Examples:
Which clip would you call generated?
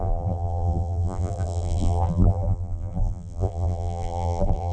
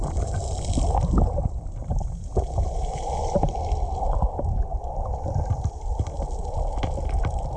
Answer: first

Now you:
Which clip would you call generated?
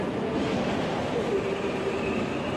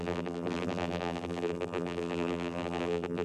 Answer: second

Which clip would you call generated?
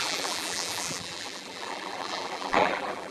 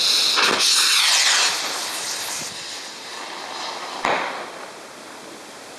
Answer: first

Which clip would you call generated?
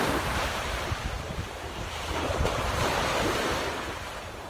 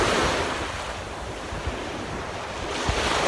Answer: first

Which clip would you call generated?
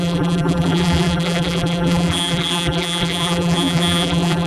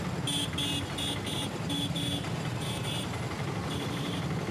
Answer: first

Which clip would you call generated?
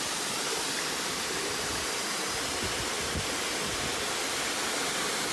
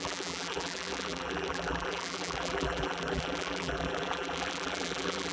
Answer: second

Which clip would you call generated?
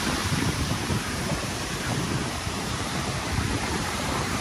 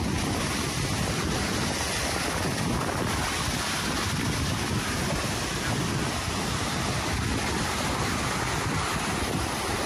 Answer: first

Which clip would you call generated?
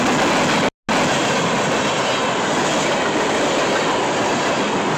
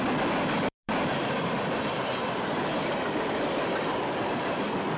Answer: second